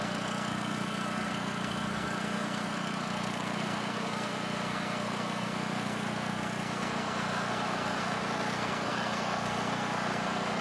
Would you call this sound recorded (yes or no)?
no